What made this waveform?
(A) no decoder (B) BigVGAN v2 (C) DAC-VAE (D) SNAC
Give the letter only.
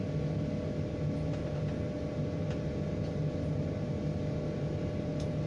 A